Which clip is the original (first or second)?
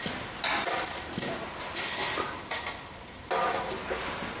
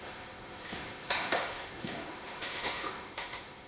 first